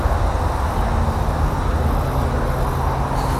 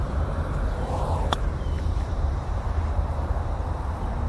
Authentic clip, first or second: first